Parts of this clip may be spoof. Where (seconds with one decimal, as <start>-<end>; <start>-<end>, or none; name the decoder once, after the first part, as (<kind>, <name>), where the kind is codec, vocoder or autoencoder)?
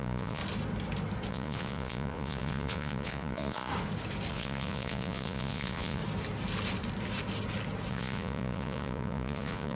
0.0-0.4 (vocoder, Vocos); 1.3-3.7; 4.3-6.0; 7.9-9.7